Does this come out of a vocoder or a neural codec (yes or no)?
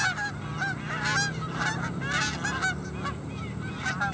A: no